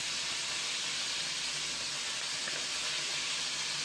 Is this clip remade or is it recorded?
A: recorded